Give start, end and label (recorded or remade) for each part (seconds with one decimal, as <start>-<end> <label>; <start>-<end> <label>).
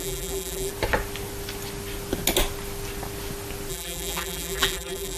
0.0-0.7 remade; 0.7-3.7 recorded; 3.7-5.2 remade